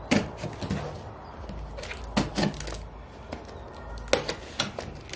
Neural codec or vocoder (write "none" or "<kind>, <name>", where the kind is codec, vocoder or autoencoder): none